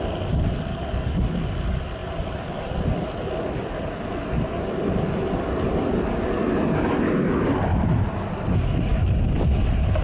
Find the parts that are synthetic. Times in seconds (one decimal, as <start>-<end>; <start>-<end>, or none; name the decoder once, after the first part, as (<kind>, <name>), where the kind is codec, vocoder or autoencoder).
2.0-6.9 (vocoder, BigVGAN v2); 7.7-8.3